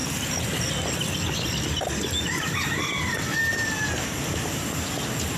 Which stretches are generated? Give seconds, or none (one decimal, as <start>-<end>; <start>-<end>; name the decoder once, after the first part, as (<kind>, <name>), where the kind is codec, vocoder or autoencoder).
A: 0.0-0.7 (vocoder, BigVGAN v2)